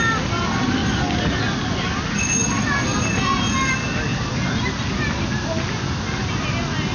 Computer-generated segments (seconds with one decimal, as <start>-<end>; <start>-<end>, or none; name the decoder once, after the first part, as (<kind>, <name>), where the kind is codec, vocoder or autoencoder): none